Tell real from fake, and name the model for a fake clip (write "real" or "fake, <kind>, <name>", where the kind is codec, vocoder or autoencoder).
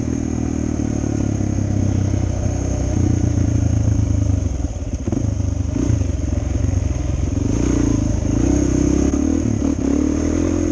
real